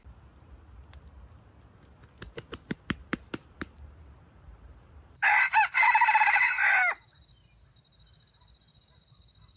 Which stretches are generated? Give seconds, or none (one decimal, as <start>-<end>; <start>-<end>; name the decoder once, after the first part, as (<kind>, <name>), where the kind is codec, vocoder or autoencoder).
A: 3.1-6.2 (vocoder, BigVGAN v2)